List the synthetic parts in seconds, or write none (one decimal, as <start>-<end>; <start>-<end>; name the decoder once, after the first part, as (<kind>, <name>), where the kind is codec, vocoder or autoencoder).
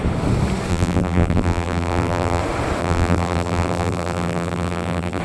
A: 0.7-2.4 (vocoder, BigVGAN v2); 2.8-5.2